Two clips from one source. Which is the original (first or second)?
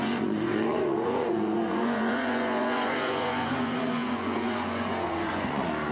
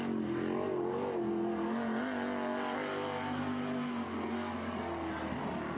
second